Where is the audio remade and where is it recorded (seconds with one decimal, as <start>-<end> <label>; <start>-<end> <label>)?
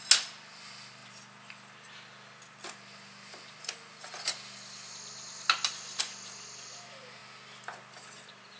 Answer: 0.0-8.6 recorded